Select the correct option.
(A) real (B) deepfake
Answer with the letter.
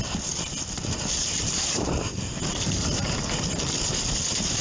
A